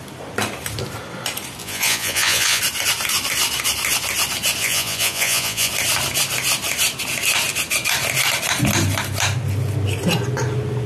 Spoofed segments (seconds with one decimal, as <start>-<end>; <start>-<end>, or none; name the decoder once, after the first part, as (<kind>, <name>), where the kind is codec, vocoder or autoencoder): 1.6-2.6 (vocoder, Vocos); 4.6-5.7